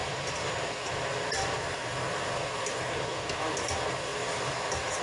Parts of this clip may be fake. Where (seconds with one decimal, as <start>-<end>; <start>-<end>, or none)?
0.0-0.5; 1.1-1.8